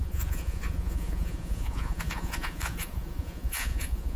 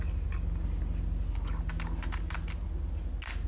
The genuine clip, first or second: second